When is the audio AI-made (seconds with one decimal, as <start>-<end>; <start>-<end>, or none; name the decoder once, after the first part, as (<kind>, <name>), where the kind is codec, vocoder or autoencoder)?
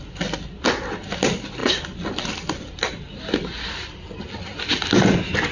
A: none